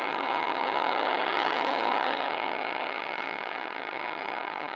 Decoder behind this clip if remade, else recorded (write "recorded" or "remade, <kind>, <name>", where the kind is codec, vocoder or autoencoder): remade, vocoder, HiFi-GAN